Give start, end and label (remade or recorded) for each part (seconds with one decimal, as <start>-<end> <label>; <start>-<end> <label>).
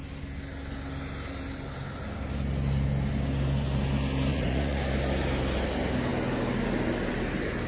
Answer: 0.0-4.3 recorded; 4.3-4.8 remade; 4.8-7.7 recorded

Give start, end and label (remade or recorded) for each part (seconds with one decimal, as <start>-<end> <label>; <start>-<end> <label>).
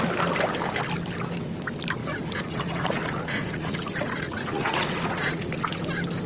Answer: 0.0-2.0 recorded; 2.0-5.8 remade; 5.8-6.3 recorded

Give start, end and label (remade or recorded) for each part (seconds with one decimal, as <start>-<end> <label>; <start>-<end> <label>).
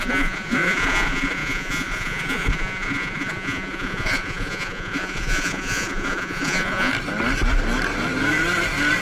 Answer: 0.0-6.9 remade; 6.9-9.0 recorded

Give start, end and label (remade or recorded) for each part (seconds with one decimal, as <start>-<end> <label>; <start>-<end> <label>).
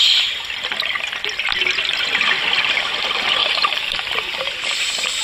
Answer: 0.0-3.4 recorded; 3.4-4.1 remade; 4.1-5.2 recorded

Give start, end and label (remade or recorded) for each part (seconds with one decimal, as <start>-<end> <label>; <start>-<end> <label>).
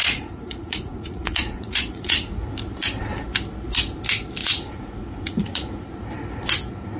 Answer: 0.0-2.5 remade; 2.5-4.4 recorded; 4.4-5.9 remade; 5.9-7.0 recorded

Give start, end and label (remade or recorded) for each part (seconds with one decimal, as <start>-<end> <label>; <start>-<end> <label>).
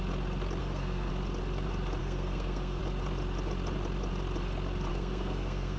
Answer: 0.0-0.6 recorded; 0.6-1.1 remade; 1.1-2.0 recorded; 2.0-2.8 remade; 2.8-4.9 recorded; 4.9-5.8 remade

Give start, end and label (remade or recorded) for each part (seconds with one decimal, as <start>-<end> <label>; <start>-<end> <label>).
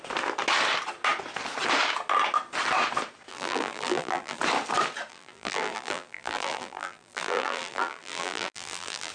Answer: 0.0-3.3 recorded; 3.3-4.4 remade; 4.4-5.1 recorded; 5.1-9.1 remade